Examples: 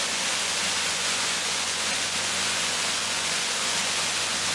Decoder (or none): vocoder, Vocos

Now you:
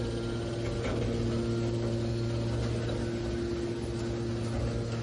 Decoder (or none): none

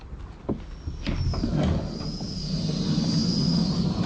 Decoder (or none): none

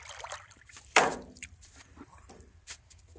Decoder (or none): vocoder, BigVGAN v2